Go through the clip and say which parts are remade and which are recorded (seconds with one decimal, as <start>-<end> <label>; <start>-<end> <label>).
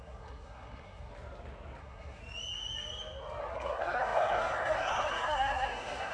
0.0-1.1 remade; 1.1-1.8 recorded; 1.8-2.2 remade; 2.2-3.5 recorded; 3.5-6.1 remade